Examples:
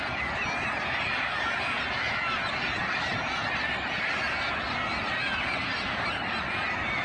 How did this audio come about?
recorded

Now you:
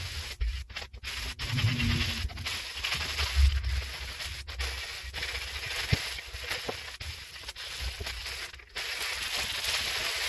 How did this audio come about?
recorded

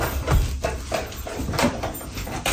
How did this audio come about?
remade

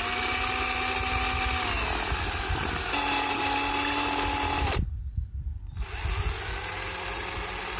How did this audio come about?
recorded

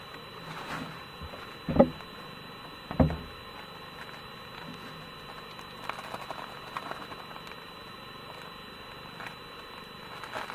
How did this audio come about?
recorded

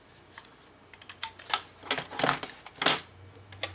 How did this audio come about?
recorded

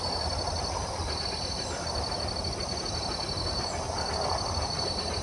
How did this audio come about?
recorded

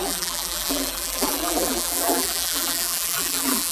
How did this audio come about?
remade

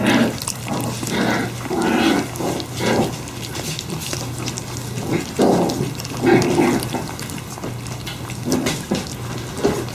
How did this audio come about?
recorded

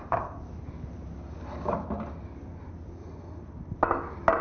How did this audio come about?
recorded